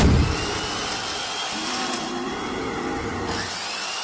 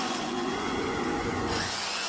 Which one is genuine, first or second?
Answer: first